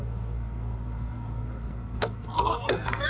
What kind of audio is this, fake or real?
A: fake